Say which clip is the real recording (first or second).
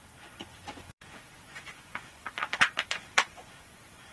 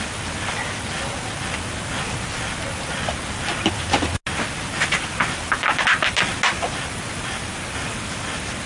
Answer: second